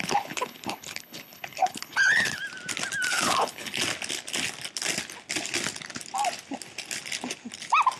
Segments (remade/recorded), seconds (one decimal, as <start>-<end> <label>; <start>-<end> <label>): 0.0-2.4 remade; 2.4-3.1 recorded; 3.1-3.8 remade; 3.8-8.0 recorded